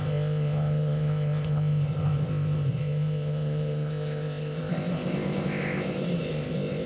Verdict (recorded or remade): remade